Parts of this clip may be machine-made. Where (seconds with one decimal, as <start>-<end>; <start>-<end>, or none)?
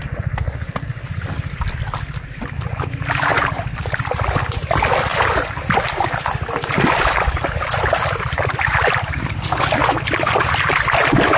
none